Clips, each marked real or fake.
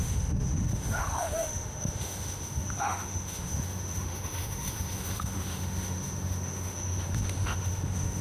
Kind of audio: fake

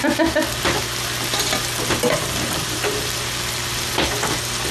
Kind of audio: real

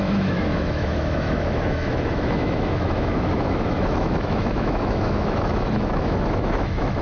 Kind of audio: fake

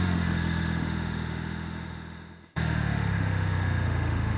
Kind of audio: fake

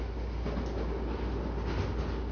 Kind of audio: real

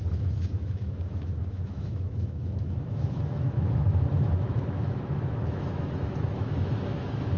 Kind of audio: fake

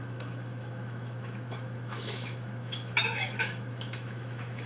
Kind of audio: fake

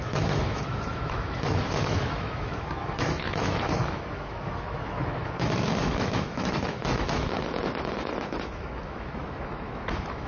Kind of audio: fake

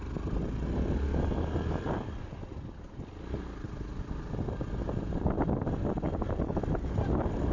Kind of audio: real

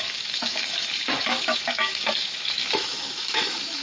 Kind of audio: fake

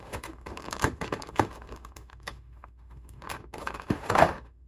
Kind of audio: fake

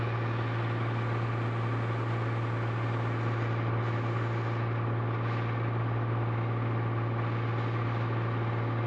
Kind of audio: real